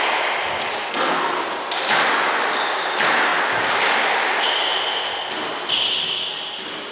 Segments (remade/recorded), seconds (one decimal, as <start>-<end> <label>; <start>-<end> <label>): 0.0-0.8 recorded; 0.8-1.4 remade; 1.4-6.9 recorded